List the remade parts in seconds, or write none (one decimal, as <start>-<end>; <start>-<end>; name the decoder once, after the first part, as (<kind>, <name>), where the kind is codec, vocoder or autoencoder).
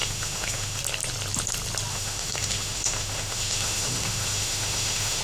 0.0-0.8 (autoencoder, DAC-VAE); 1.9-5.2